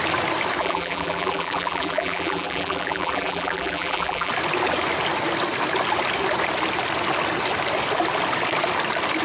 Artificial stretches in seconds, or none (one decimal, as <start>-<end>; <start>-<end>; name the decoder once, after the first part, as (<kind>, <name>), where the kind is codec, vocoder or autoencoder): 0.6-4.3 (vocoder, BigVGAN v2)